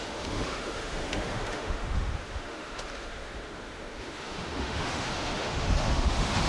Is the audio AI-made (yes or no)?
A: yes